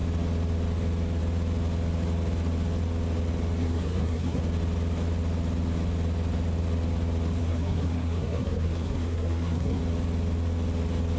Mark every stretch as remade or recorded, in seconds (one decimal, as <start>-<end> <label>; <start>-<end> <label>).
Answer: 0.0-3.6 recorded; 3.6-4.4 remade; 4.4-7.4 recorded; 7.4-9.8 remade; 9.8-11.2 recorded